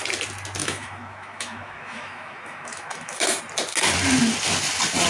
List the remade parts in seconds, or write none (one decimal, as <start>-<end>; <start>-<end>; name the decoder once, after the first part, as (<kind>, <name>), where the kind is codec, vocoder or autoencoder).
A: 0.6-3.4 (autoencoder, DAC-VAE)